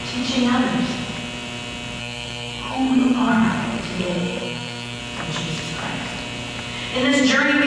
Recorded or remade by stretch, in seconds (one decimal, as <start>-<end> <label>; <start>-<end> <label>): 0.0-2.0 recorded; 2.0-5.0 remade; 5.0-7.7 recorded